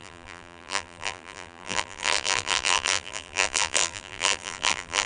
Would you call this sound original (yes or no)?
no